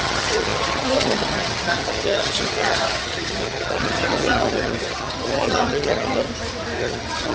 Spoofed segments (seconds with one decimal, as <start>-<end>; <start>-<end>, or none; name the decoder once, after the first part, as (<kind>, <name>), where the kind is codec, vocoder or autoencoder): 0.0-6.3 (vocoder, HiFi-GAN); 6.8-7.3